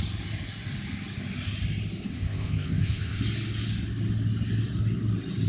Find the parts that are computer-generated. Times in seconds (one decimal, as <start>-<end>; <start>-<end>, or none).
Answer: 2.1-3.2